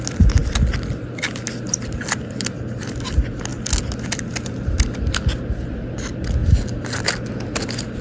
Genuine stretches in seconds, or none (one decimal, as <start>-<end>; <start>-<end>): 0.0-8.0